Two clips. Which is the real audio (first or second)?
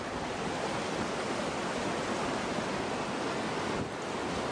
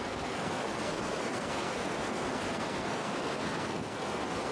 first